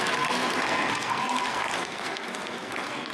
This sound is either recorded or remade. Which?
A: remade